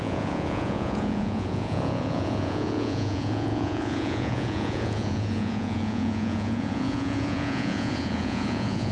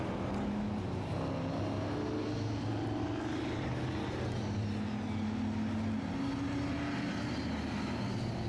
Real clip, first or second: second